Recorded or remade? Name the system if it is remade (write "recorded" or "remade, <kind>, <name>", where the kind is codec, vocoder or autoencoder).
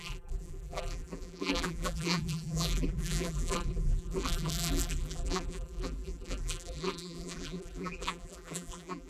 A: remade, vocoder, BigVGAN v2